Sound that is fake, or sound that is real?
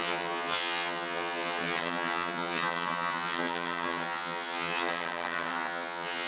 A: fake